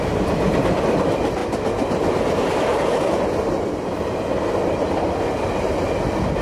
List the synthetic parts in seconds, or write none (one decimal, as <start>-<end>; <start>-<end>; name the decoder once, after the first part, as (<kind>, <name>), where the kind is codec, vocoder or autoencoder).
none